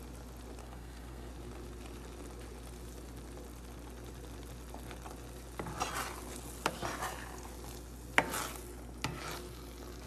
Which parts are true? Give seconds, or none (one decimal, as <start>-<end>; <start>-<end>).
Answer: 0.0-0.6; 1.3-10.1